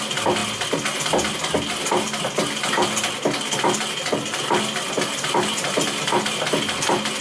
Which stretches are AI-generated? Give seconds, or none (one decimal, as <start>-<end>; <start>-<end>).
none